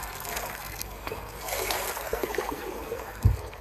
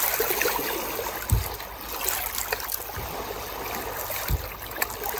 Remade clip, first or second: first